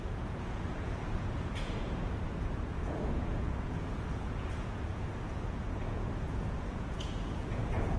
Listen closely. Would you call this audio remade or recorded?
remade